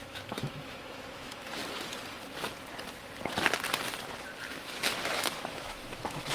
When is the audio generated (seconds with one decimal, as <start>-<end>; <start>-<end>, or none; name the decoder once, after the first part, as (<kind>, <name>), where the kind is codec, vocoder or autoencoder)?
0.0-1.6 (autoencoder, DAC-VAE); 4.5-6.3